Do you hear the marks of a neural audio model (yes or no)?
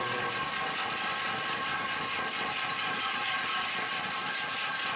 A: no